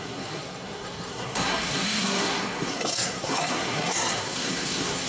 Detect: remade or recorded remade